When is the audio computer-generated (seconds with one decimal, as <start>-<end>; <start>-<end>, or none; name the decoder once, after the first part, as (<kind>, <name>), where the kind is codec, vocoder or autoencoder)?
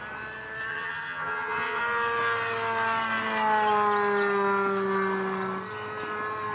0.7-1.8 (vocoder, HiFi-GAN)